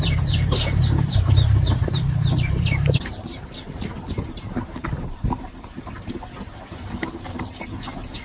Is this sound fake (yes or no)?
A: yes